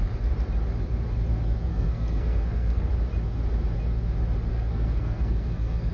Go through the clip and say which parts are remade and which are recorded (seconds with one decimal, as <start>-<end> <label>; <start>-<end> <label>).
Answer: 0.0-1.7 recorded; 1.7-2.9 remade; 2.9-4.5 recorded; 4.5-5.9 remade